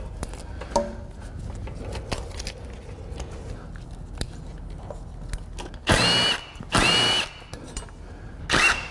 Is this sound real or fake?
real